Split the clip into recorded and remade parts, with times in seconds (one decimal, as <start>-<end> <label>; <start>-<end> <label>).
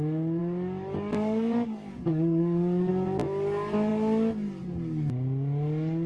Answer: 0.0-0.4 recorded; 0.4-2.9 remade; 2.9-6.1 recorded